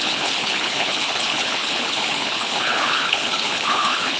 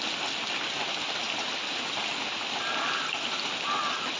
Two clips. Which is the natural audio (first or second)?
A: second